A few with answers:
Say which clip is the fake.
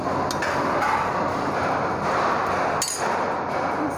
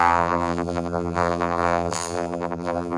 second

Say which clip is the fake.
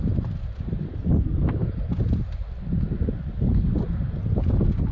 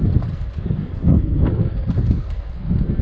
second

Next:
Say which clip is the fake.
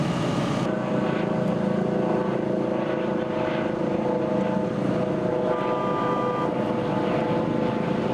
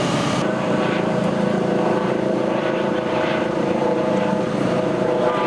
second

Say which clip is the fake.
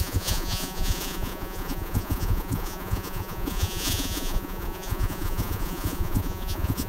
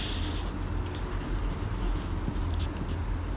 first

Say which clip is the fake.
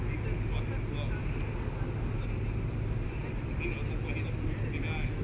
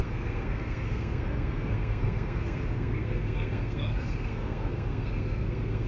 second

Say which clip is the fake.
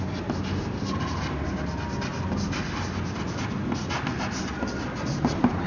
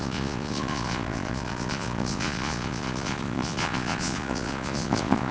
second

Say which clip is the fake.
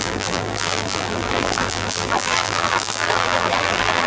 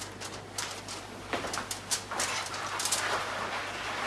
first